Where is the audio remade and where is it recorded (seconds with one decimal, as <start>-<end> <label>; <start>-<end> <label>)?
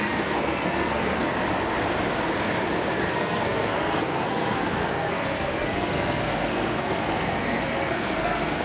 0.0-1.3 remade; 1.3-3.1 recorded; 3.1-8.6 remade